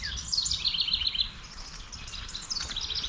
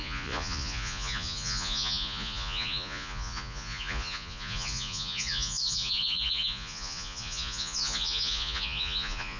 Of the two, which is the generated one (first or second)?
second